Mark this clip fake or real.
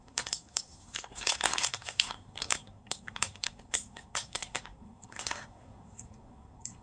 fake